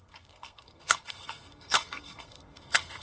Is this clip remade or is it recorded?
remade